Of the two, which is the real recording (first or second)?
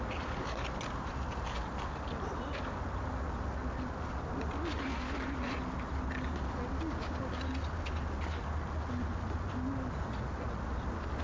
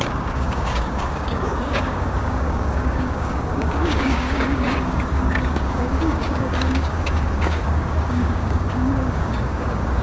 first